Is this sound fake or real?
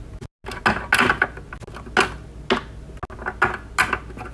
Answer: real